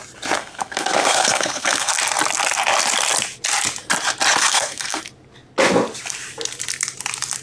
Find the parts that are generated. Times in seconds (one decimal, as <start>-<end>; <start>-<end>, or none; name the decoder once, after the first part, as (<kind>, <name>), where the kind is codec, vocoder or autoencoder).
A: 0.4-1.9 (codec, SNAC); 4.4-5.0